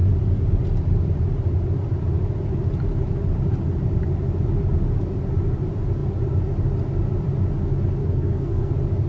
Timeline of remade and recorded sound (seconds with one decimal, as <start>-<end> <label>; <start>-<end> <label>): 0.0-8.0 recorded; 8.0-8.7 remade; 8.7-9.1 recorded